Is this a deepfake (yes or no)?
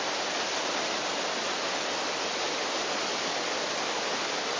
no